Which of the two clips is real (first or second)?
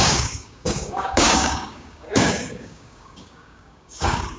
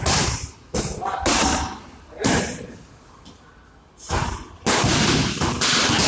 second